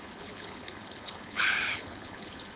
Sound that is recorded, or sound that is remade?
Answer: remade